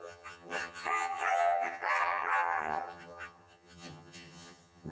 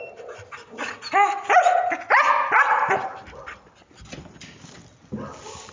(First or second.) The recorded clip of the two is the second